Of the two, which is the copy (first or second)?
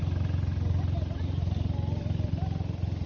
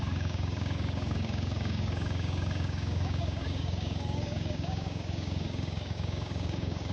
second